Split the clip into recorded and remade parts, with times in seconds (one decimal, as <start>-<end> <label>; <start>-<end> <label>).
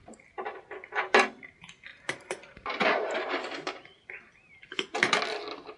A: 0.0-1.9 recorded; 1.9-4.2 remade; 4.2-5.8 recorded